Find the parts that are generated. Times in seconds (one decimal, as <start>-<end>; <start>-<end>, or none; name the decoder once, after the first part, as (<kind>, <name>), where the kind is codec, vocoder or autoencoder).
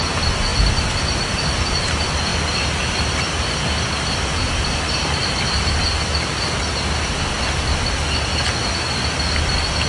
0.5-1.5 (vocoder, BigVGAN v2); 2.3-6.6